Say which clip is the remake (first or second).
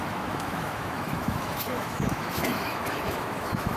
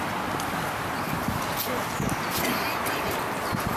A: first